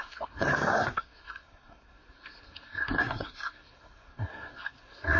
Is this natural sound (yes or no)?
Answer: no